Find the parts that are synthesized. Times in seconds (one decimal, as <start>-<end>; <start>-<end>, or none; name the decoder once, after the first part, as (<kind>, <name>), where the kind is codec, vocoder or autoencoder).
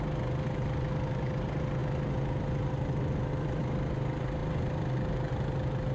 none